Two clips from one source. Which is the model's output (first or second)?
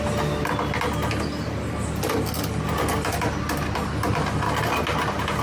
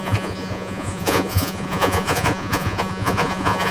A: second